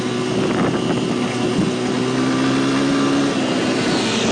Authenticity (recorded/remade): recorded